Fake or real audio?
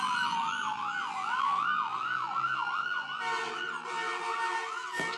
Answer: fake